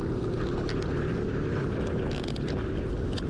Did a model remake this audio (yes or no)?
no